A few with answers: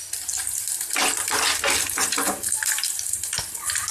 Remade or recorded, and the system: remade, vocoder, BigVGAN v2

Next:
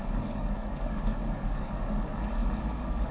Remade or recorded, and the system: remade, codec, DAC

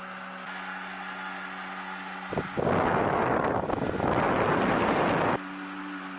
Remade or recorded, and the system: recorded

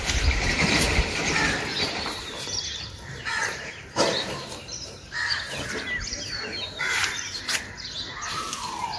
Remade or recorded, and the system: remade, vocoder, BigVGAN v2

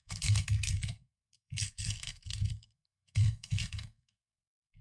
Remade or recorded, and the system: remade, codec, SNAC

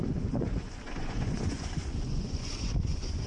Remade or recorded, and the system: remade, vocoder, Vocos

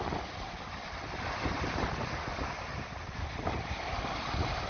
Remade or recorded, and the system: recorded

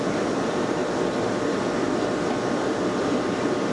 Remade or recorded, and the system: recorded